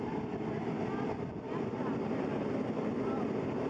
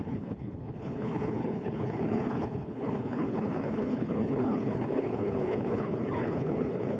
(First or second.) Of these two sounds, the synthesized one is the second